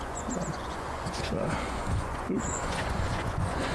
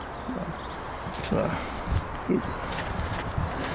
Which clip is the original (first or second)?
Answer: second